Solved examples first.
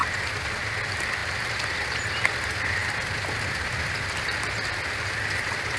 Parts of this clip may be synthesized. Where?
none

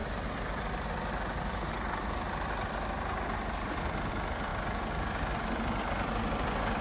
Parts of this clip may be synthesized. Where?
none